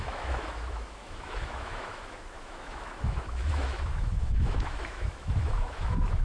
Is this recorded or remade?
remade